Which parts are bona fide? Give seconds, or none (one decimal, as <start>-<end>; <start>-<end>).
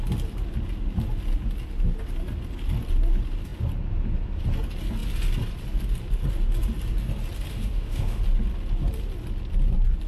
0.0-7.5; 8.2-10.1